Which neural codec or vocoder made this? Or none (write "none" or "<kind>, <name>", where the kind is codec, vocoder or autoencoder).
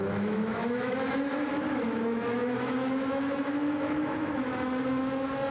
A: autoencoder, DAC-VAE